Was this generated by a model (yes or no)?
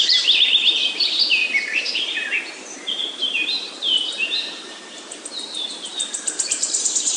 yes